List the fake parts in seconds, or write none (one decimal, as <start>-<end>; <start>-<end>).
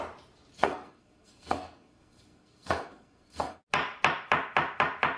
0.5-3.6